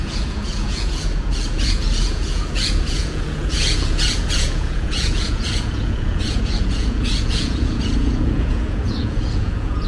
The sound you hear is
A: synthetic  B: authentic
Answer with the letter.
A